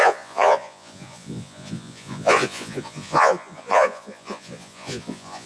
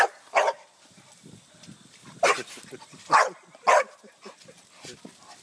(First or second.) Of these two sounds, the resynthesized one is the first